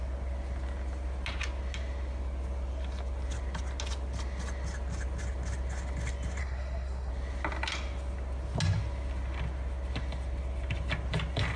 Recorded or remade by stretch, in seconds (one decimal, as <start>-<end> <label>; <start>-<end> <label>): 0.0-6.4 recorded; 6.4-7.1 remade; 7.1-11.6 recorded